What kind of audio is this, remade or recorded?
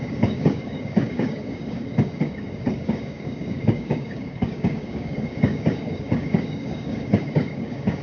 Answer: remade